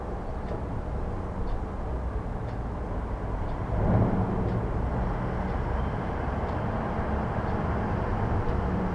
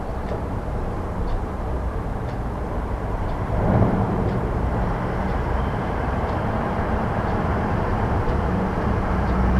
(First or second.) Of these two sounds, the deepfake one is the second